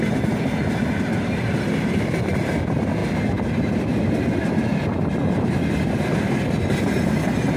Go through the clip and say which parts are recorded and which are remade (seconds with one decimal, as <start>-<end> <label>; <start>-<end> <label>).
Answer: 0.0-7.6 recorded